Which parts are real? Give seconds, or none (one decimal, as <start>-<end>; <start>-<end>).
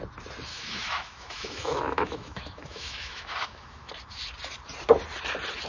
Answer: 0.0-0.5; 3.9-5.7